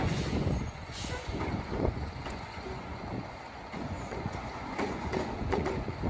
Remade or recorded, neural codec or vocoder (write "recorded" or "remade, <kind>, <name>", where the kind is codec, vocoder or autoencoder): remade, vocoder, Vocos